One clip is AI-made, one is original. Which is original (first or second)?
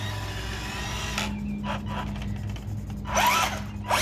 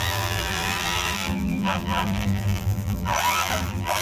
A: first